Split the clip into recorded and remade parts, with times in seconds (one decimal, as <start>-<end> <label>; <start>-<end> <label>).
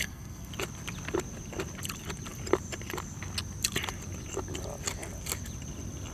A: 0.0-0.5 remade; 0.5-6.1 recorded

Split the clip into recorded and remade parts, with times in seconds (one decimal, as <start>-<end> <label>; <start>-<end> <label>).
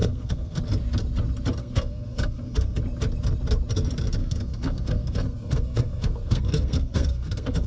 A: 0.0-0.6 remade; 0.6-1.6 recorded; 1.6-2.8 remade; 2.8-4.2 recorded; 4.2-7.7 remade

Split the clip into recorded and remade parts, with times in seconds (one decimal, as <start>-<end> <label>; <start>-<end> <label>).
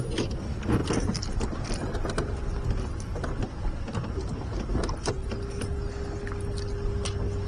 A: 0.0-7.5 recorded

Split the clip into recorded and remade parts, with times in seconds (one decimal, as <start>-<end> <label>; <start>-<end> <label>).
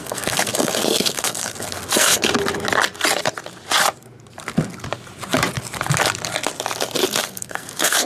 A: 0.0-2.3 remade; 2.3-7.2 recorded; 7.2-8.1 remade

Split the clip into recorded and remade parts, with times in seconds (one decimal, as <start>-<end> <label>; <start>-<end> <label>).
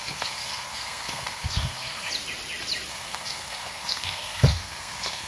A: 0.0-2.1 remade; 2.1-2.9 recorded; 2.9-5.3 remade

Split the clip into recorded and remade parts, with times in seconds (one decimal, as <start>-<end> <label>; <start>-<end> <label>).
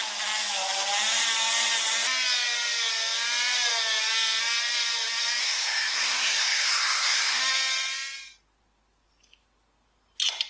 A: 0.0-5.4 recorded; 5.4-7.4 remade; 7.4-10.5 recorded